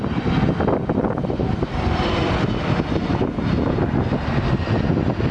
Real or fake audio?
real